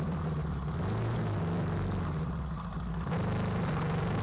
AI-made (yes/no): no